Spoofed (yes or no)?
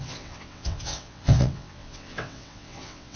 yes